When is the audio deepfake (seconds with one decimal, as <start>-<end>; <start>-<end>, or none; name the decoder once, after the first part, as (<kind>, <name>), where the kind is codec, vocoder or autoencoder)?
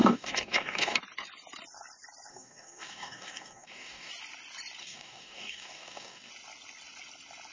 0.0-1.0 (codec, DAC); 2.3-4.1; 4.8-6.3